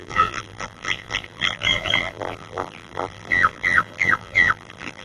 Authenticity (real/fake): fake